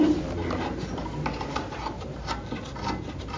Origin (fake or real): real